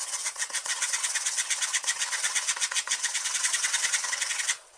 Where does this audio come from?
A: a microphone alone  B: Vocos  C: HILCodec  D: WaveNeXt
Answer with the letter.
D